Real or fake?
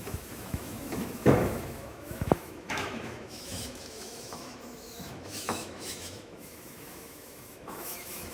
fake